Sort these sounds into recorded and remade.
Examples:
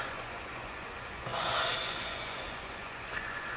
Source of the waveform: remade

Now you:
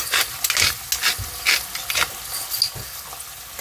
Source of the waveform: recorded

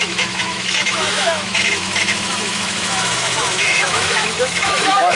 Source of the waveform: remade